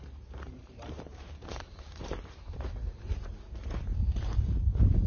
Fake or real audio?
fake